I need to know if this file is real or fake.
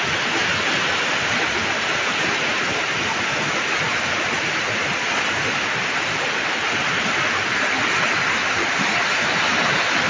real